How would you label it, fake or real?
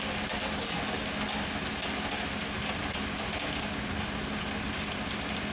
real